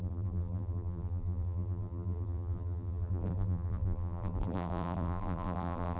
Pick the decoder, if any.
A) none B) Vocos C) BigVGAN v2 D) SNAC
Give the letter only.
C